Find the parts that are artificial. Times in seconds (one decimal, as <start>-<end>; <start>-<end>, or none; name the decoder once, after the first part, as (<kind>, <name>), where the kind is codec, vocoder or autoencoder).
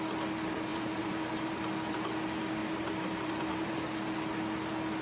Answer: 0.7-1.6 (vocoder, BigVGAN v2); 2.6-3.9